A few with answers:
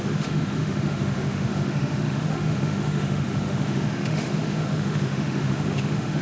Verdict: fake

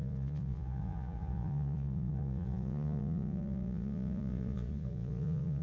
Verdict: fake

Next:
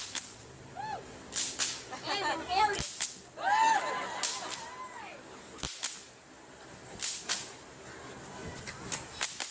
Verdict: real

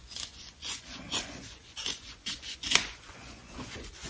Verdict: fake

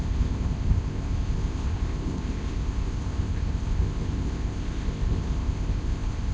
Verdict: fake